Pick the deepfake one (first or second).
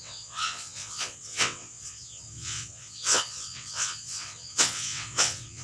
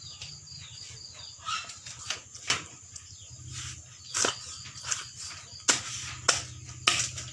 first